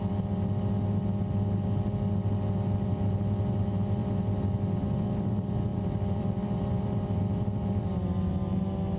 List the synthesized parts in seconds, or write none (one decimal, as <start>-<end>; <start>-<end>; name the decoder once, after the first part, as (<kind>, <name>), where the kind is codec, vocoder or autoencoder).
4.0-4.5 (vocoder, BigVGAN v2); 5.7-7.2